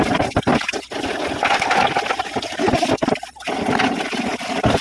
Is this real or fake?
real